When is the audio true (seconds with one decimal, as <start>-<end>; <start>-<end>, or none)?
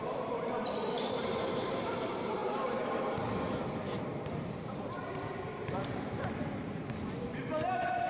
none